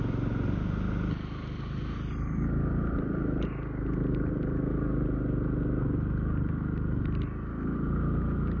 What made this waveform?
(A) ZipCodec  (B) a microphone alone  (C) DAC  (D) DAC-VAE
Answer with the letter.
B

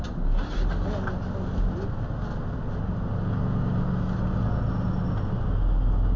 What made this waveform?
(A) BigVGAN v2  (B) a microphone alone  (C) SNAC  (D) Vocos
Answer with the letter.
B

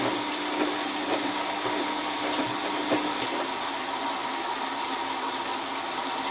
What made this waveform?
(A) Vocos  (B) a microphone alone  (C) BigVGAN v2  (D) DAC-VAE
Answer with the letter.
B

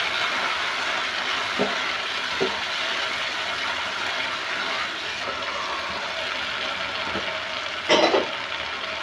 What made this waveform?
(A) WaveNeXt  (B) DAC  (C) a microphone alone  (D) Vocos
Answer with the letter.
C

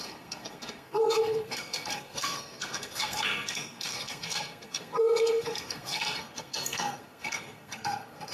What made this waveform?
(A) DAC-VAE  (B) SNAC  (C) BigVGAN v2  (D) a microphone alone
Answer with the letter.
B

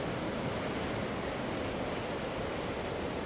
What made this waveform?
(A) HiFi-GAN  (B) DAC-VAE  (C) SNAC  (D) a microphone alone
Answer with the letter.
D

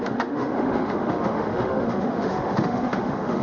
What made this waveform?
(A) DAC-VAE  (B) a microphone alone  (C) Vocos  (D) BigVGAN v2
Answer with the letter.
A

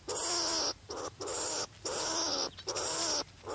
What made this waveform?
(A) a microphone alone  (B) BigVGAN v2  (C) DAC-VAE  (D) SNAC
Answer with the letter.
A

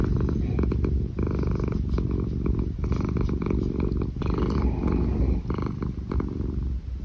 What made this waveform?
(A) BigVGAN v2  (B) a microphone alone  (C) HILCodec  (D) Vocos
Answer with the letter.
B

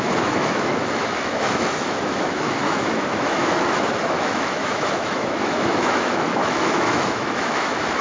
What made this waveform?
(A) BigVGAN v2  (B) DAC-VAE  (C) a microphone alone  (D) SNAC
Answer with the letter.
B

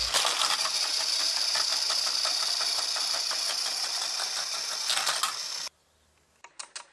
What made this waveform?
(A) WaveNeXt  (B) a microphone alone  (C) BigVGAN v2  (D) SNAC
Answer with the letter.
B